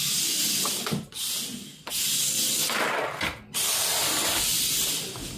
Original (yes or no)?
yes